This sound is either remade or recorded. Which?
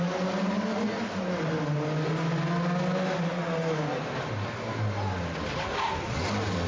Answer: recorded